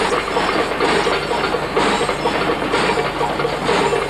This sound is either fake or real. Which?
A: real